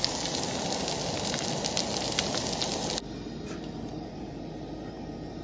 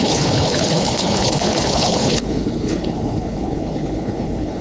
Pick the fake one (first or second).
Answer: second